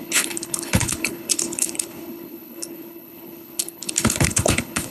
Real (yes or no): no